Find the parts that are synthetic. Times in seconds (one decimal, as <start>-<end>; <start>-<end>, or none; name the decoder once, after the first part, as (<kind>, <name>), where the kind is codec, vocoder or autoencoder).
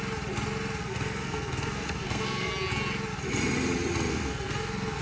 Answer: 0.8-2.5 (codec, SNAC); 4.1-5.0